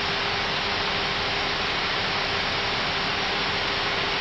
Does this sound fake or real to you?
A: real